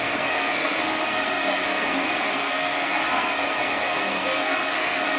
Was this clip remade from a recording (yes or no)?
yes